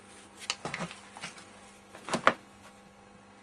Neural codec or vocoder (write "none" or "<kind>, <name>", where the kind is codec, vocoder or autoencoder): none